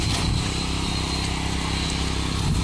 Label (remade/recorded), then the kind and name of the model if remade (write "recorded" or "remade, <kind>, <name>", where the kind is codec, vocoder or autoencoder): recorded